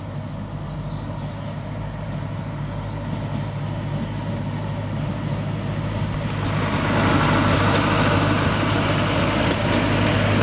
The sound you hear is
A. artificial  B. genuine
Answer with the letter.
B